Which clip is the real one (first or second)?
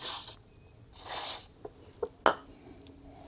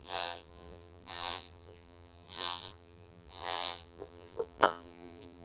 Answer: first